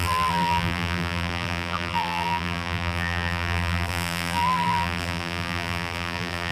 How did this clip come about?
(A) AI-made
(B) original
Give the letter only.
A